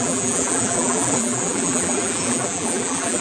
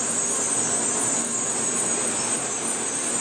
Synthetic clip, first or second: first